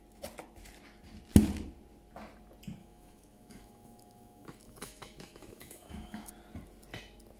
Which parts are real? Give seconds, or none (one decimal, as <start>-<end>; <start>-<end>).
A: 0.0-2.8; 6.3-7.4